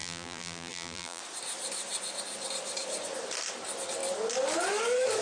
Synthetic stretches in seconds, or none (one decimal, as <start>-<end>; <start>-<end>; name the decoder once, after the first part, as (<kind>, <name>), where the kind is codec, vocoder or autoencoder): 0.0-1.2 (vocoder, BigVGAN v2)